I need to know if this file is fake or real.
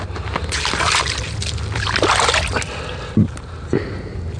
real